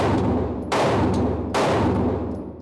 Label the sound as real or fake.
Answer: fake